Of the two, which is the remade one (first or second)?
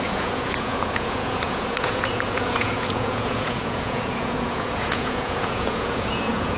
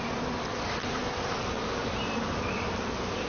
first